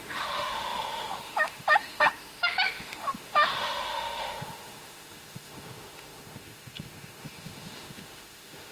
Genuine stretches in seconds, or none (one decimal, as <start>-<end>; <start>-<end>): none